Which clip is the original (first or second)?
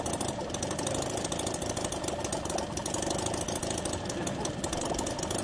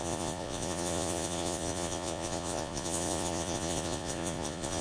first